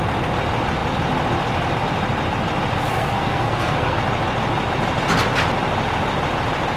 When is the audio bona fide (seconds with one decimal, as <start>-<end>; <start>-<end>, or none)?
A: 0.0-2.9; 4.0-6.8